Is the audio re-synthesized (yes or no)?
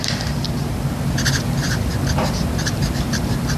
yes